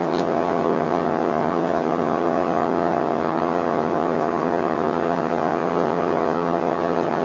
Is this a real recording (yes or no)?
no